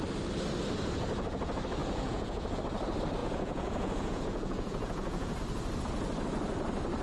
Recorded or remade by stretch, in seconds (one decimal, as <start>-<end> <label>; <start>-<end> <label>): 0.0-1.8 recorded; 1.8-2.6 remade; 2.6-3.2 recorded; 3.2-5.4 remade; 5.4-7.0 recorded